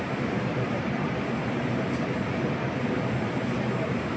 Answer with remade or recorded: recorded